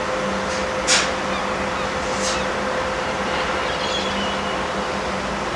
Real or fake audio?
real